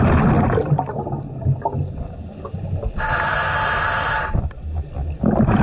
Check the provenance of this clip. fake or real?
real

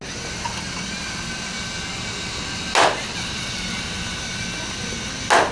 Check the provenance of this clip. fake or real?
real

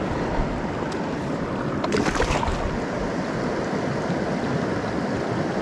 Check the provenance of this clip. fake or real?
real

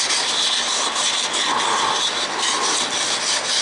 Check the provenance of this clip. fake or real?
real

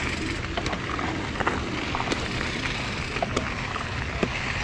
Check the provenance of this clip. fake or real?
real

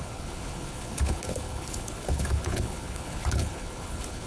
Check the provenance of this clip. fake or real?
fake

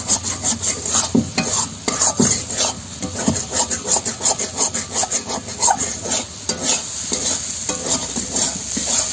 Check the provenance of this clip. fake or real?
real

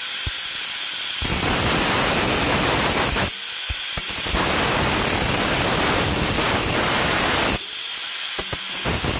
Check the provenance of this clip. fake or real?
real